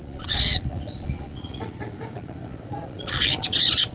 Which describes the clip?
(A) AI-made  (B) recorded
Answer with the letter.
A